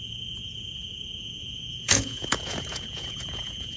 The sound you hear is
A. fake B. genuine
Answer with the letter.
A